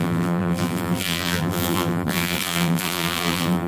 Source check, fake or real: fake